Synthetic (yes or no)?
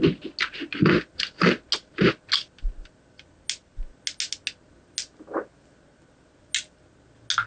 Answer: no